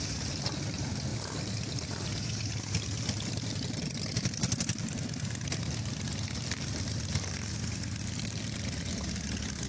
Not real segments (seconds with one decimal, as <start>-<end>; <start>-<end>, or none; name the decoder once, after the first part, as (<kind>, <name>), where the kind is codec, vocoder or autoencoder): none